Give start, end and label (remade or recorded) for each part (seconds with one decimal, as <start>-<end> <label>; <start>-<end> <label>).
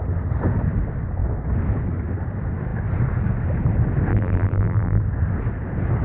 0.0-4.1 recorded; 4.1-5.0 remade; 5.0-6.0 recorded